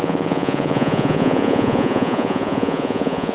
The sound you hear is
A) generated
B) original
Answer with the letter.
A